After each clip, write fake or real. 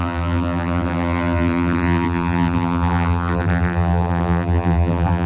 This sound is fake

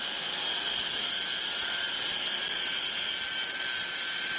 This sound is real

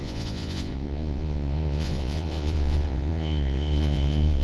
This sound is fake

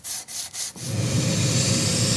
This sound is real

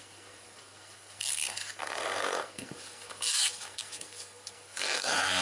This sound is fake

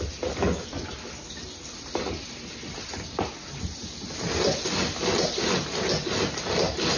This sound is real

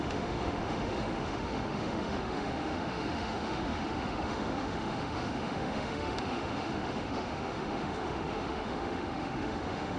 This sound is fake